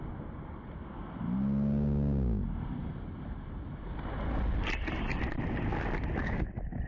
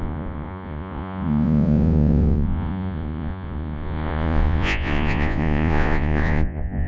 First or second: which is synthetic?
second